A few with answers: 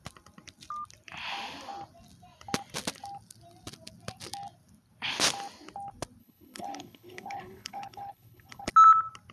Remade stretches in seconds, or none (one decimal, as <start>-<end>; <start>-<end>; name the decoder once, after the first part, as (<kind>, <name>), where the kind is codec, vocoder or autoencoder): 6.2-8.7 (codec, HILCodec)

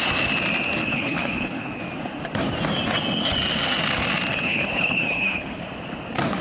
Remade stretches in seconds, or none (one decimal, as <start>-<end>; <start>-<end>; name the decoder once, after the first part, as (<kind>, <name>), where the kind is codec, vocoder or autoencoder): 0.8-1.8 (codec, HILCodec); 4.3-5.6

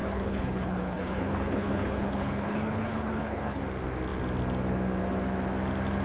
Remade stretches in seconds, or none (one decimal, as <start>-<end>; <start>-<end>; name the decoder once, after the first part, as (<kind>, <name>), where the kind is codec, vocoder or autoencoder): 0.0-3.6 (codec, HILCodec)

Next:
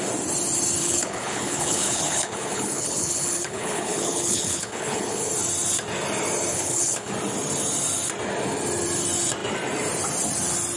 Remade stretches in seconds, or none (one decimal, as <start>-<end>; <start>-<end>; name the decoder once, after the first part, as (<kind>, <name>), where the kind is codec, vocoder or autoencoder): 0.8-5.3 (codec, HILCodec); 6.5-7.1